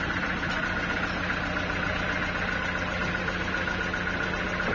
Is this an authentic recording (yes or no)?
yes